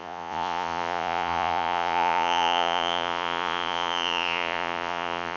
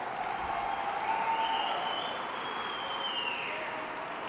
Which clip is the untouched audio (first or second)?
second